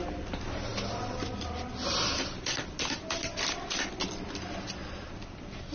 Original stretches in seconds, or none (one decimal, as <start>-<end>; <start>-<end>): 0.0-5.7